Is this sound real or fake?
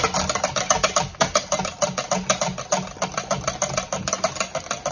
real